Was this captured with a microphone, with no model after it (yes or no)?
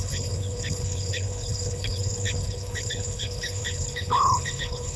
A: no